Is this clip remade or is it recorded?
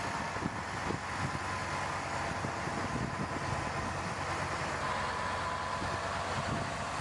recorded